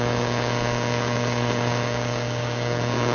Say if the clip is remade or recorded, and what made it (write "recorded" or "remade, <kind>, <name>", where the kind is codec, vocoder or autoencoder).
remade, codec, DAC